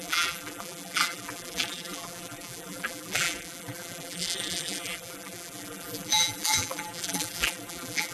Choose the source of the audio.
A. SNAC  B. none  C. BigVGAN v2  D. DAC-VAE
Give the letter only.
C